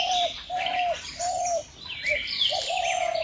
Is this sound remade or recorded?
remade